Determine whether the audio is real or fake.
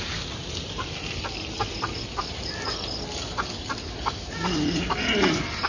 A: real